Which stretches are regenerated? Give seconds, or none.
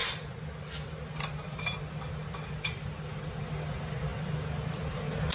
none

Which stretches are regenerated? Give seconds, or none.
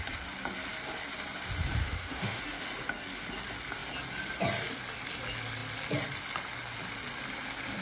1.8-2.4 (autoencoder, DAC-VAE)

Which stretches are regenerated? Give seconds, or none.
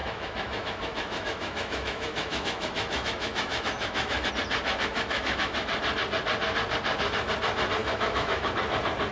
0.0-4.3 (autoencoder, DAC-VAE); 4.9-5.7; 7.8-8.5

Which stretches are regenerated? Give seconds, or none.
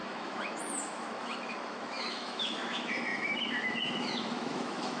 0.0-5.0 (autoencoder, DAC-VAE)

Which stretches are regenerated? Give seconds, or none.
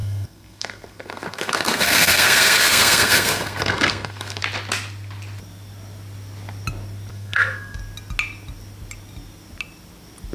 0.0-4.4 (codec, SNAC); 7.1-7.8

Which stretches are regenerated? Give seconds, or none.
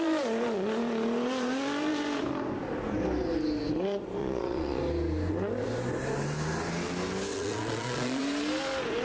4.2-4.8 (vocoder, Vocos); 7.3-8.2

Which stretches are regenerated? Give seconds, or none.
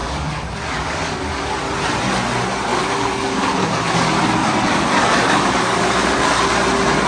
0.0-1.6 (codec, DAC); 2.7-4.0; 4.4-6.4